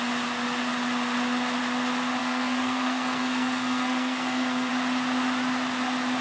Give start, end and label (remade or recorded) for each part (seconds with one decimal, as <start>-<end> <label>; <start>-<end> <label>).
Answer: 0.0-2.2 recorded; 2.2-4.7 remade; 4.7-6.2 recorded